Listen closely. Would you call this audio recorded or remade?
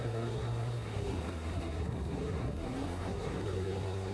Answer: remade